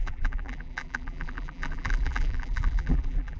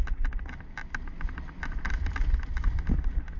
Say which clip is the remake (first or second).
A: first